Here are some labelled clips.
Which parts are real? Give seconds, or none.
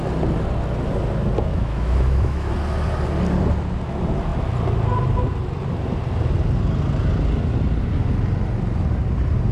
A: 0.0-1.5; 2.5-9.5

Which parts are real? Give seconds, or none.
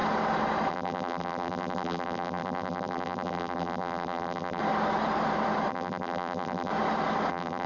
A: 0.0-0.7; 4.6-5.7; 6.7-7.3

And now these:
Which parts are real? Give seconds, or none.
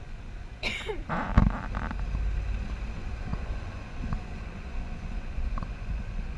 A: 1.3-2.9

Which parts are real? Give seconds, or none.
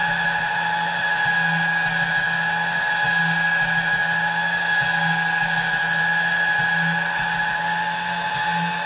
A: 0.0-8.9